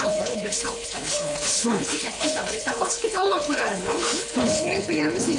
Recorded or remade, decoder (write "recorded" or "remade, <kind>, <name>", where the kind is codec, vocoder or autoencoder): remade, codec, HILCodec